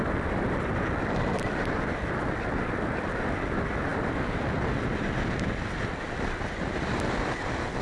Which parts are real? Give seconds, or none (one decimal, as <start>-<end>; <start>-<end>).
1.7-3.9; 4.4-7.8